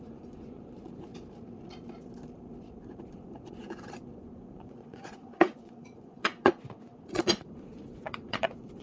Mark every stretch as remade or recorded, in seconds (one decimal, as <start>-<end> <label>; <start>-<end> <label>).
0.0-1.1 remade; 1.1-3.1 recorded; 3.1-8.8 remade